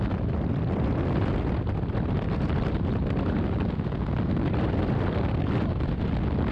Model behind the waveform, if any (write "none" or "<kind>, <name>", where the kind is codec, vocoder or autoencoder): none